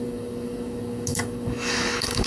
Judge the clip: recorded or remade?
remade